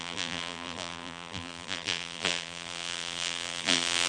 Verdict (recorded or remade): remade